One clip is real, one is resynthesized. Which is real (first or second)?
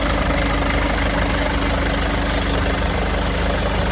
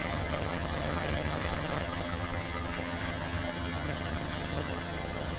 first